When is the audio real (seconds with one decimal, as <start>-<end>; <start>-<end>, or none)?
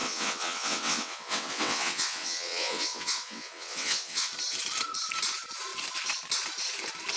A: 4.3-7.2